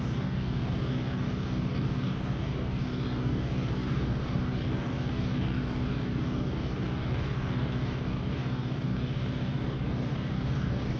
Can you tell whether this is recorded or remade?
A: remade